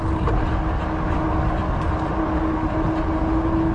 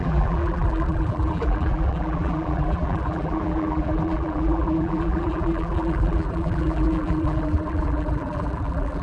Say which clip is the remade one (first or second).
second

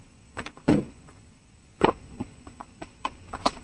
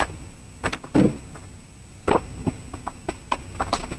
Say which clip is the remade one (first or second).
first